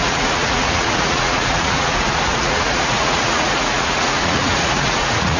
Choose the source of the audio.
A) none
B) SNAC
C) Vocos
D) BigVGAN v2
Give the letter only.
C